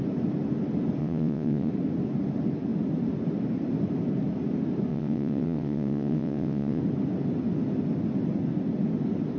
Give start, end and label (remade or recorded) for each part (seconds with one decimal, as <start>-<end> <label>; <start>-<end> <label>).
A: 0.0-1.0 recorded; 1.0-1.7 remade; 1.7-4.9 recorded; 4.9-6.8 remade; 6.8-9.4 recorded